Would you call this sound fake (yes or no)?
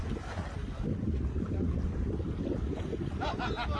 no